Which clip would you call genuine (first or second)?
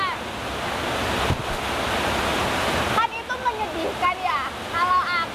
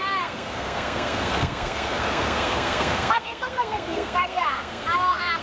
first